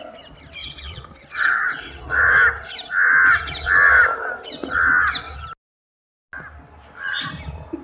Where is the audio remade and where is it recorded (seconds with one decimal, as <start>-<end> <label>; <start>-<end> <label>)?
0.0-0.6 recorded; 0.6-2.1 remade; 2.1-7.8 recorded